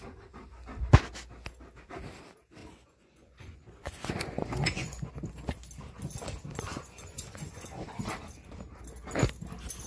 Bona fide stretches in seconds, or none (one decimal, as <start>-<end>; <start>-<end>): 0.0-2.6; 5.1-6.7; 8.0-9.9

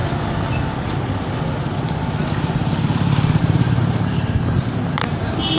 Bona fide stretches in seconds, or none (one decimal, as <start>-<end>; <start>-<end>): 0.0-3.4

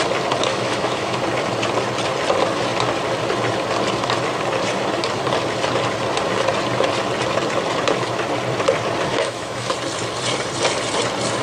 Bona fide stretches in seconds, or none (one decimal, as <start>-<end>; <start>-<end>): 0.0-0.5; 1.2-9.1; 9.7-11.4

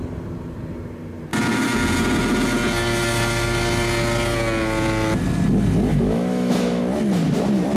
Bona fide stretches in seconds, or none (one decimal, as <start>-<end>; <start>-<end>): 0.0-5.9; 6.8-7.8

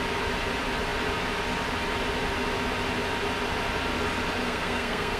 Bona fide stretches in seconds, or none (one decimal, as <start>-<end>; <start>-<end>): 0.0-4.4

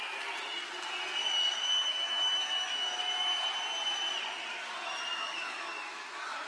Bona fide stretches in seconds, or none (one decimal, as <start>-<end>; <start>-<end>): 0.0-1.2; 3.0-5.1

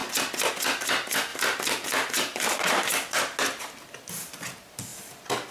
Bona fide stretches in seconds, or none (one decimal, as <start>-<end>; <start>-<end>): 0.0-1.3; 2.7-5.5

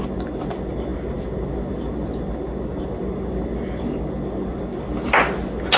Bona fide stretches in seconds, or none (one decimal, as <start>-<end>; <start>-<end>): 0.0-5.8